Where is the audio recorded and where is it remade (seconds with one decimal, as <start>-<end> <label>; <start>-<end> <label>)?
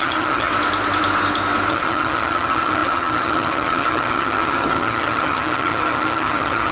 0.0-0.5 remade; 0.5-1.7 recorded; 1.7-6.7 remade